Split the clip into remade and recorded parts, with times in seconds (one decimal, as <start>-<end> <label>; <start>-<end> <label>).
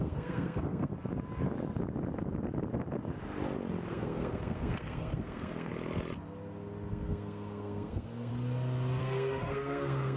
0.0-0.9 remade; 0.9-3.9 recorded; 3.9-5.7 remade; 5.7-6.9 recorded; 6.9-8.3 remade; 8.3-9.0 recorded; 9.0-10.2 remade